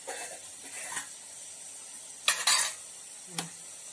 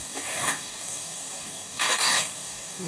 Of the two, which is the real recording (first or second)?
first